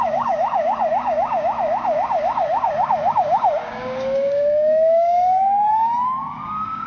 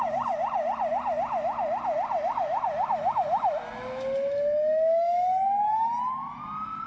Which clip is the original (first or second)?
second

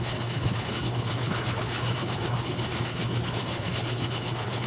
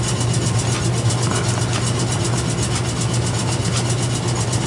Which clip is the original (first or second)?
second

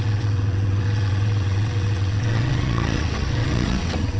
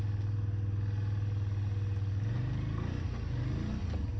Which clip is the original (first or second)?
second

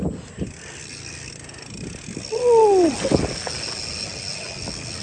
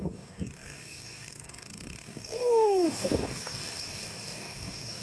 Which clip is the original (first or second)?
first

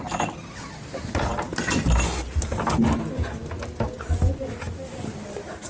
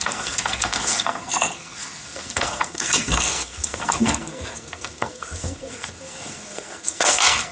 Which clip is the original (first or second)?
first